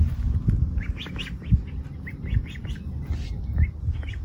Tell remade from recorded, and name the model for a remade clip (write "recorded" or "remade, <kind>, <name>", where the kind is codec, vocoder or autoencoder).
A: recorded